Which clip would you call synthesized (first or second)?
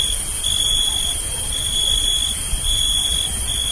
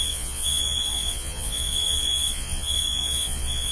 second